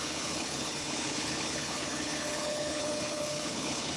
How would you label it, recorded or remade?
remade